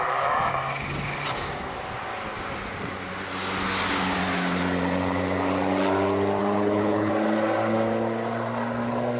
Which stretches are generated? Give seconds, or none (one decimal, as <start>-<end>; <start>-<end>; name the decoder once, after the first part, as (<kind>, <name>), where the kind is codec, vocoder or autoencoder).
6.4-7.1 (codec, HILCodec)